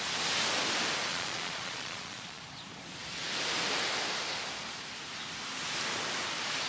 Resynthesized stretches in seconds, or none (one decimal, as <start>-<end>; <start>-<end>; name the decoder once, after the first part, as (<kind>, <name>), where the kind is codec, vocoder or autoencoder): 1.1-2.4 (vocoder, Vocos)